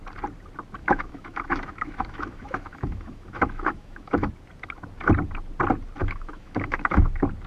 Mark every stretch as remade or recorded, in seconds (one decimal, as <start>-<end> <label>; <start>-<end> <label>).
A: 0.0-0.8 recorded; 0.8-4.3 remade; 4.3-6.0 recorded; 6.0-7.1 remade; 7.1-7.5 recorded